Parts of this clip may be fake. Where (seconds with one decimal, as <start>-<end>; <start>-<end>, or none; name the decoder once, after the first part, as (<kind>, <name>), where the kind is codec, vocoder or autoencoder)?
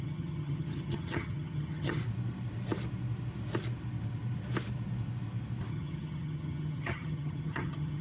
0.0-2.0 (vocoder, HiFi-GAN); 5.7-8.0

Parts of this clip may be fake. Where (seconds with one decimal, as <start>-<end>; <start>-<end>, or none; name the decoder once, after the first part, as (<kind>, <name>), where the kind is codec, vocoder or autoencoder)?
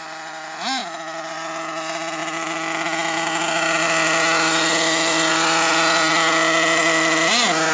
none